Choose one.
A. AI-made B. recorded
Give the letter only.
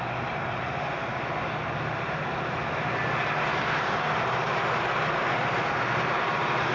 B